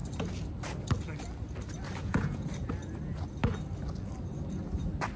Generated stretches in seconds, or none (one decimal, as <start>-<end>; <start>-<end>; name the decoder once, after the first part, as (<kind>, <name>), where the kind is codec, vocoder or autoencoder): 2.0-2.5 (vocoder, Vocos)